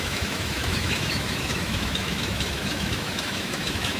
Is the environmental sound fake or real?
fake